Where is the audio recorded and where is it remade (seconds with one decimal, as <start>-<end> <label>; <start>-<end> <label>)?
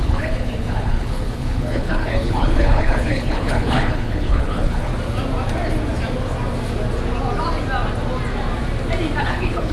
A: 0.0-4.9 remade; 4.9-9.2 recorded; 9.2-9.7 remade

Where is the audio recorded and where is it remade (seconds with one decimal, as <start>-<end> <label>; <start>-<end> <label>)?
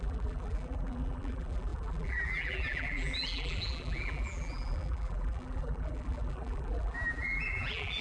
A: 0.0-8.0 remade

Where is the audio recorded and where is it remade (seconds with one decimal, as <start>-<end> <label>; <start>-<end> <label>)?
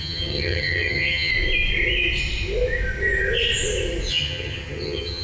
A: 0.0-1.3 remade; 1.3-4.1 recorded; 4.1-5.2 remade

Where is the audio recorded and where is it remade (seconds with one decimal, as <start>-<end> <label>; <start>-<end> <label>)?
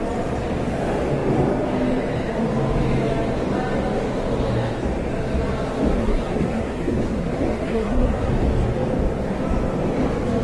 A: 0.0-6.0 recorded; 6.0-8.3 remade; 8.3-10.4 recorded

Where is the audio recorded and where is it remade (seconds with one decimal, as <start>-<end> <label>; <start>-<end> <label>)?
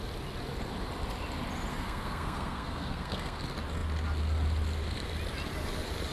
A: 0.0-1.7 recorded; 1.7-3.4 remade; 3.4-6.1 recorded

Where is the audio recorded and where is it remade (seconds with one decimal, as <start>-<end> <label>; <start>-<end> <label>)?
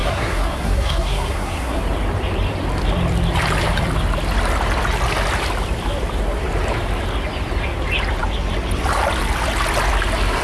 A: 0.0-1.8 remade; 1.8-10.4 recorded